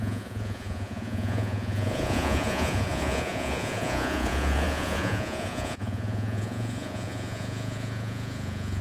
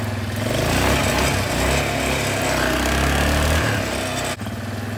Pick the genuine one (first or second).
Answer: second